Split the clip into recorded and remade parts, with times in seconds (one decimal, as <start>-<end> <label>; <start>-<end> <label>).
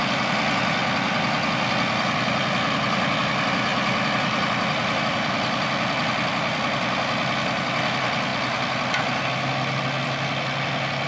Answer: 0.0-0.8 recorded; 0.8-3.2 remade; 3.2-11.1 recorded